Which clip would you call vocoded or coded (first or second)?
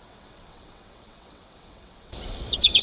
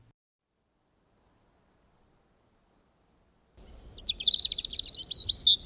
first